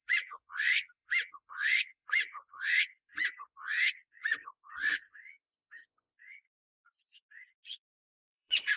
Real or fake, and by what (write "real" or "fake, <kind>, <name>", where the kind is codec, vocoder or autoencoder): fake, vocoder, Vocos